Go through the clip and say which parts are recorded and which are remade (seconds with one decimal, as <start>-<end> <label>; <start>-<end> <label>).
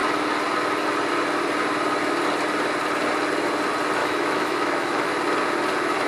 0.0-4.0 recorded; 4.0-5.1 remade; 5.1-6.1 recorded